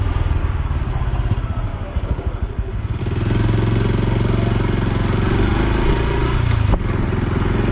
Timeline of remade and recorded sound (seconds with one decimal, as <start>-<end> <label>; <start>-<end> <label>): 0.0-0.4 recorded; 0.4-0.9 remade; 0.9-1.7 recorded; 1.7-3.0 remade; 3.0-7.7 recorded